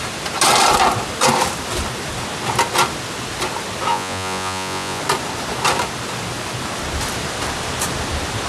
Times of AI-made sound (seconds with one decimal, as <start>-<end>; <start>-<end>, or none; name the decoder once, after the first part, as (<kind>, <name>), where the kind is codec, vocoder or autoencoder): 3.9-5.0 (vocoder, Vocos)